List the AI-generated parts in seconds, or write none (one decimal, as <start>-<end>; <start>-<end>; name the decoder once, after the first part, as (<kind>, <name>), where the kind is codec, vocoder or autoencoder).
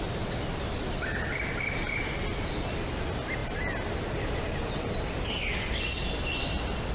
none